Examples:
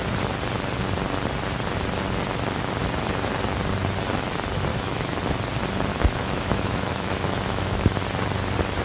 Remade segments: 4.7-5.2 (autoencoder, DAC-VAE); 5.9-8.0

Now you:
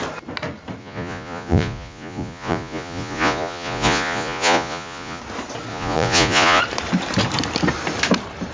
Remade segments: 0.8-5.2 (vocoder, Vocos); 5.7-6.6

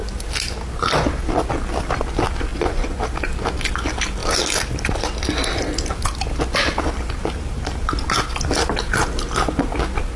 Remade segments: 2.5-3.0 (vocoder, Vocos)